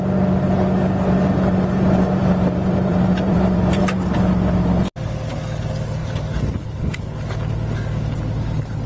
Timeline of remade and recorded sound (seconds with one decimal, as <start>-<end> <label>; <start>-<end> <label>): 0.0-2.2 recorded; 2.2-3.8 remade; 3.8-8.9 recorded